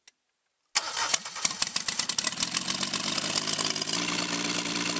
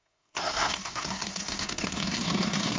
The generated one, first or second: second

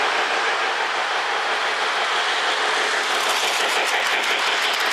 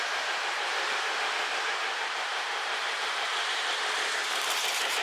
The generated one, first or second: second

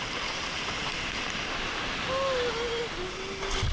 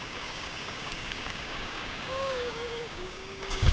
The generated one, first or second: second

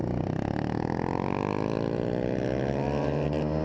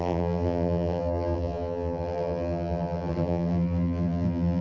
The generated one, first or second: second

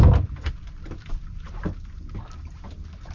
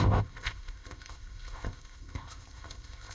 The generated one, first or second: second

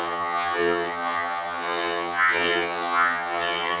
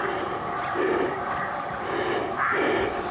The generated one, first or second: first